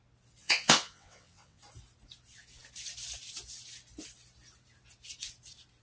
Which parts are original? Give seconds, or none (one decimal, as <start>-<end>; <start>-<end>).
0.0-0.4; 1.6-5.8